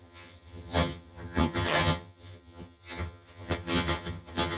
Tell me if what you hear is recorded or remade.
remade